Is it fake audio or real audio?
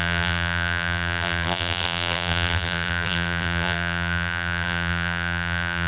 fake